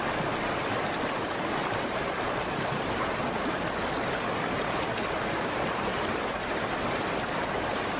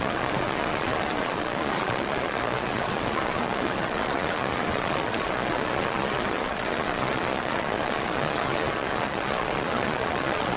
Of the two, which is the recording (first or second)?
first